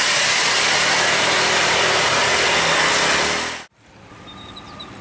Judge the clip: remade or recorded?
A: recorded